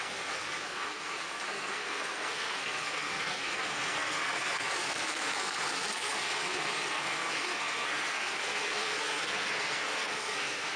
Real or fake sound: fake